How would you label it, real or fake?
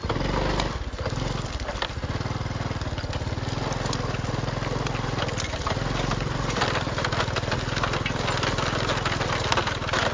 real